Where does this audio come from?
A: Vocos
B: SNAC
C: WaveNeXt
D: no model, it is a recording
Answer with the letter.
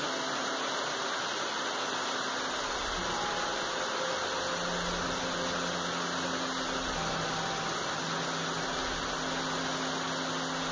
D